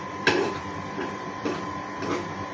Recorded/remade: remade